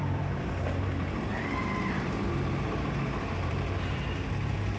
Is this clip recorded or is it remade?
remade